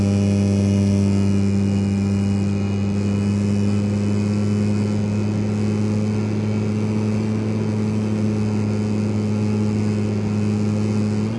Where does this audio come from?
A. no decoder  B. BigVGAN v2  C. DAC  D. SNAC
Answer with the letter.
A